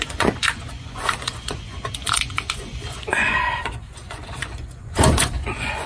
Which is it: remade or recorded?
remade